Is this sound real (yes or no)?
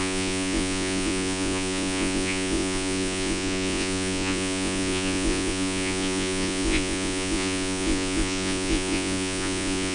no